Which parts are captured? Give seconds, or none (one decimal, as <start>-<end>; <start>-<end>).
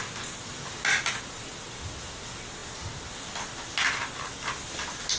0.0-5.2